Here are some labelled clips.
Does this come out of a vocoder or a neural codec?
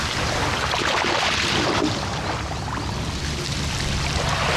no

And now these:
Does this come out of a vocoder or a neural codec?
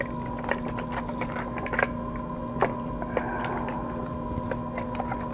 no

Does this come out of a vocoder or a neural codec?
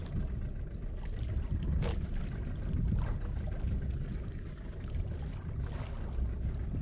no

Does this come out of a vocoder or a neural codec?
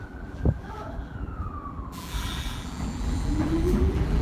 yes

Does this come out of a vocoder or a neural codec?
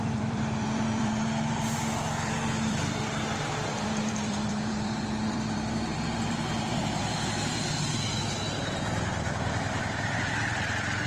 yes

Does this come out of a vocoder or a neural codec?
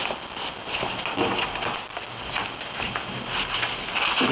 no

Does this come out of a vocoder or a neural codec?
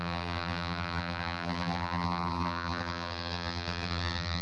yes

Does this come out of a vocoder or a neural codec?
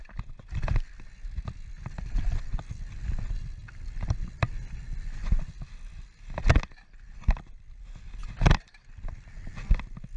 no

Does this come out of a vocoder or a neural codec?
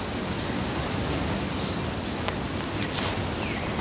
no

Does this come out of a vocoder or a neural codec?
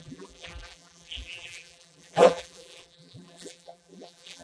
yes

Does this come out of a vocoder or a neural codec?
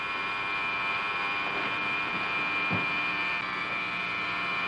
no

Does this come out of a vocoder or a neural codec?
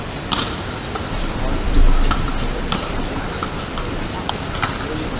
yes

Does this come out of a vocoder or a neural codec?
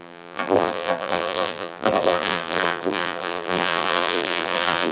yes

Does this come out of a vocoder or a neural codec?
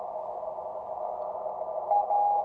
no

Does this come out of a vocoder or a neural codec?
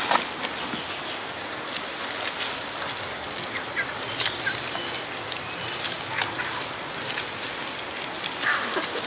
no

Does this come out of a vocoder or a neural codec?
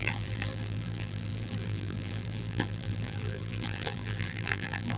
yes